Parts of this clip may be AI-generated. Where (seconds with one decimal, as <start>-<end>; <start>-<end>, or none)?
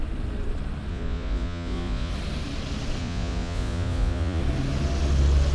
0.9-2.1; 3.0-4.4